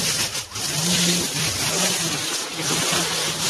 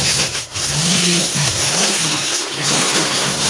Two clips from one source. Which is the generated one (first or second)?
second